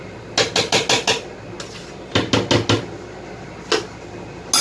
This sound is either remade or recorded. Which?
recorded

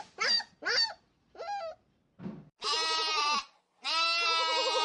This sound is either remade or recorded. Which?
recorded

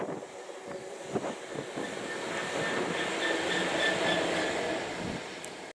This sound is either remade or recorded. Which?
recorded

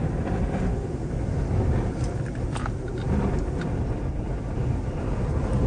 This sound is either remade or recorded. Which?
recorded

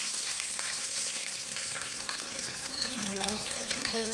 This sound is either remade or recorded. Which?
remade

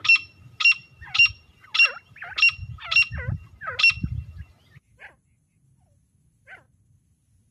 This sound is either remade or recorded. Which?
recorded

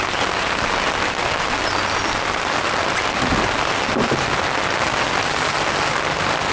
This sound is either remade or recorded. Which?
recorded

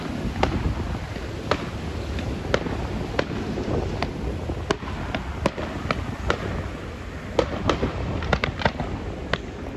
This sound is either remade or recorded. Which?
recorded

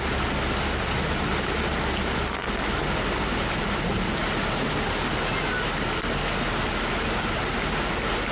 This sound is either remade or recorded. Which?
recorded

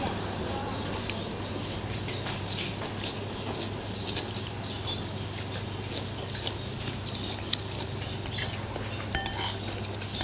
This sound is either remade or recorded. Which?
recorded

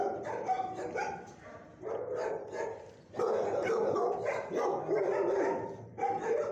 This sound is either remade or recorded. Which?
recorded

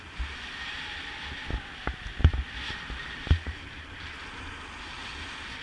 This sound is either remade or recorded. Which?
recorded